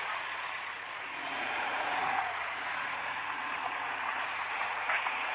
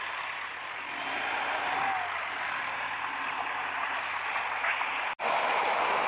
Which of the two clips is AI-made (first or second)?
first